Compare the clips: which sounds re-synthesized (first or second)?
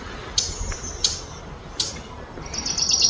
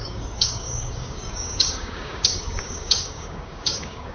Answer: second